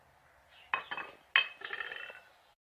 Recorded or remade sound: recorded